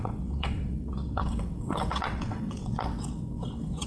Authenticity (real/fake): fake